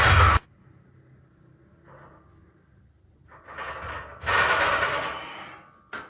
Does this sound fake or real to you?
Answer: real